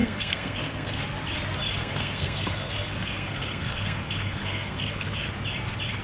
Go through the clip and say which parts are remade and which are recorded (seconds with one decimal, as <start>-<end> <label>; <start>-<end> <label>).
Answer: 0.0-1.0 remade; 1.0-1.7 recorded; 1.7-5.3 remade; 5.3-6.0 recorded